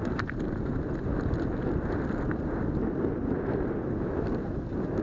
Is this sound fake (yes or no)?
no